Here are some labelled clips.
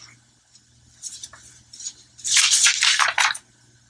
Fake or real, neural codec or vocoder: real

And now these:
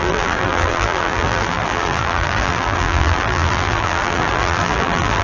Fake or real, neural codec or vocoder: fake, vocoder, BigVGAN v2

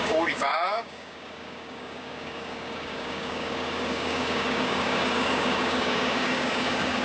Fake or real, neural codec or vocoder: fake, codec, DAC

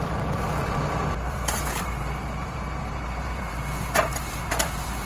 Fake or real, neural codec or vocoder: real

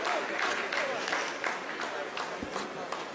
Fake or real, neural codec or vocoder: real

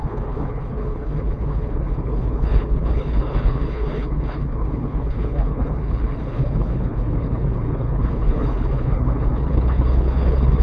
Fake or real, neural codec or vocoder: fake, codec, HILCodec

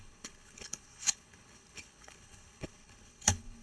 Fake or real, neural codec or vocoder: fake, codec, HILCodec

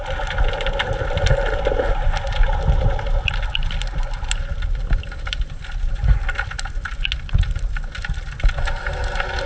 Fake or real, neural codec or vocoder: real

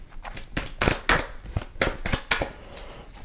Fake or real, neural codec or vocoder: real